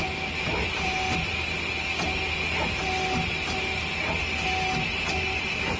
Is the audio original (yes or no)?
yes